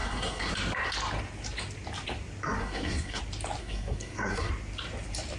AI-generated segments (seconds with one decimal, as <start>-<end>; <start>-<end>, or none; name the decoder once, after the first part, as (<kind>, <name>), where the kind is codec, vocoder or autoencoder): 0.0-0.5 (codec, SNAC); 2.6-3.2; 3.6-4.5